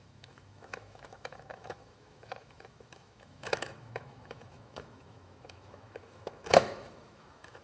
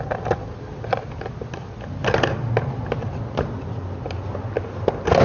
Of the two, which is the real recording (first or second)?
second